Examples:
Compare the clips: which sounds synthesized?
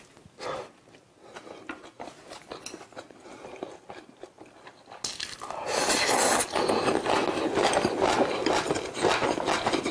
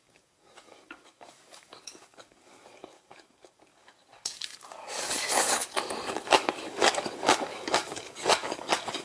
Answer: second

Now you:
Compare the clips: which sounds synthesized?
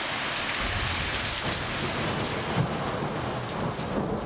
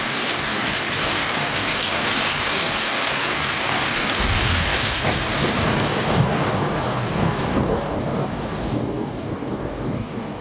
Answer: second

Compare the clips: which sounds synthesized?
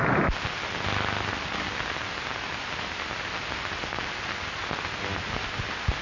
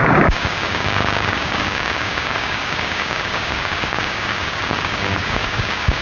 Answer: second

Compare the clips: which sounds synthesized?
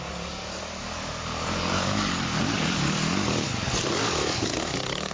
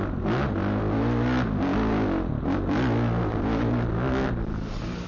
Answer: first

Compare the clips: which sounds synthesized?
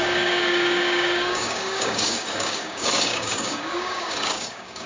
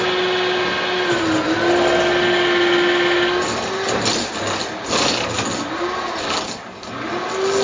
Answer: first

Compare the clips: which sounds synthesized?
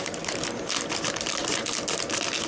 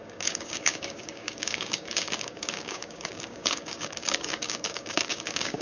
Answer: second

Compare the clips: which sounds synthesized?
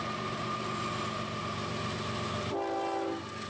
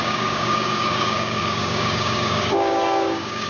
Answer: second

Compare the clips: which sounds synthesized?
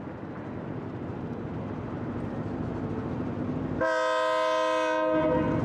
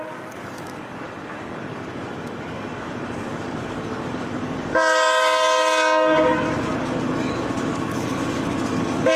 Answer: second